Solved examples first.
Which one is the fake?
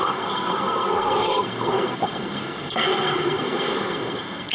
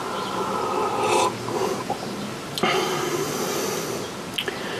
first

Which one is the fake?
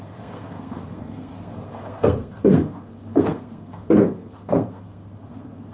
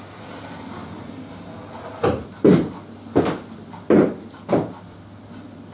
first